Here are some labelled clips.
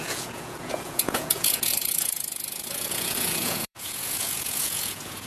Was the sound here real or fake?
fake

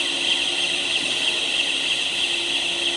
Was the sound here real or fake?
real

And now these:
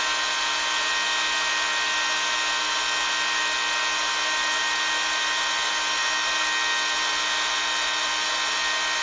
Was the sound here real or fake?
real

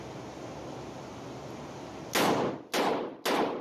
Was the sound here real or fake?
real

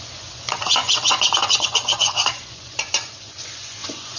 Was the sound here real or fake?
fake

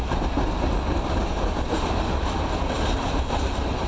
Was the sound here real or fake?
real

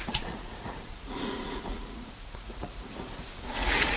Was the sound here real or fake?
fake